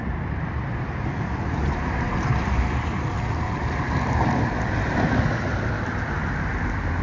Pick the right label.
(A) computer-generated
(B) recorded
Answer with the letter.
A